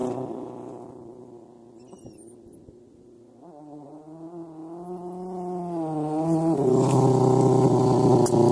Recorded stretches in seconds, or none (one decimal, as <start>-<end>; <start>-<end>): 0.0-8.5

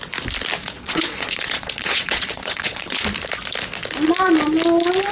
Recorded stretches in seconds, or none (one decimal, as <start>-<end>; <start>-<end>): 0.0-0.6; 3.0-5.1

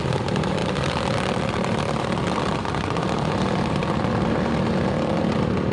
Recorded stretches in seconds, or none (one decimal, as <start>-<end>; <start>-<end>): 0.0-5.7

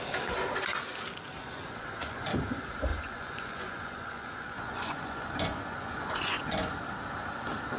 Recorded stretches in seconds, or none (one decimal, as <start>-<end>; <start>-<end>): 0.0-1.4; 2.3-2.9; 6.7-7.8

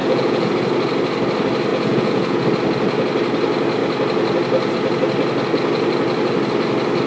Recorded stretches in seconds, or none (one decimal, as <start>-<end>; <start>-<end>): 0.5-1.7; 2.4-7.1

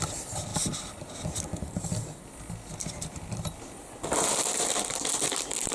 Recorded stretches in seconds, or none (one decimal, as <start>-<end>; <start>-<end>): 0.0-5.7